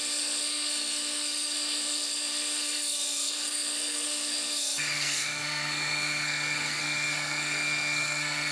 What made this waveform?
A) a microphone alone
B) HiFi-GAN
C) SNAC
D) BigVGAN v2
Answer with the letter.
C